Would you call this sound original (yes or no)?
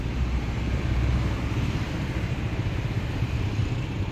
no